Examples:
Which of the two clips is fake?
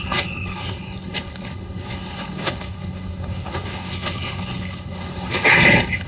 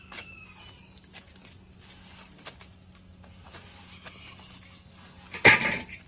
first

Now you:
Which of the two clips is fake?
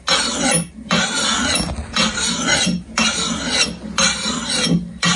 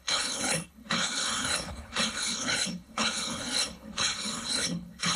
second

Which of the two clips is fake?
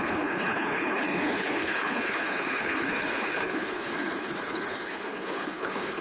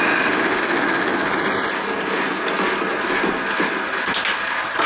first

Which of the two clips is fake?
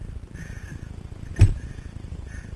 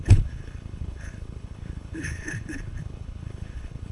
second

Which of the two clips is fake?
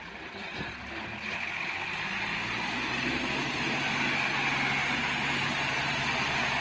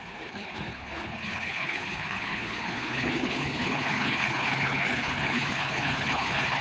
second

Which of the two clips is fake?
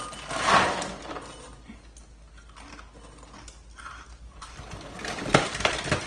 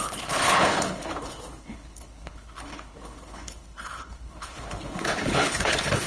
second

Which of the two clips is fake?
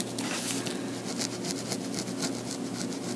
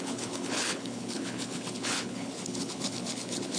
second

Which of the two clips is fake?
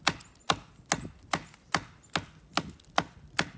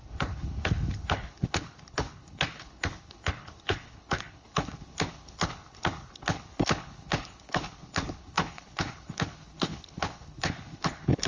second